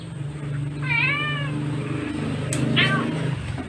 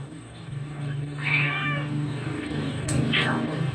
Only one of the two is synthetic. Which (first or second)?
second